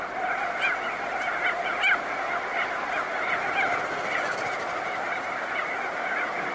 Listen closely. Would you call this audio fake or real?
real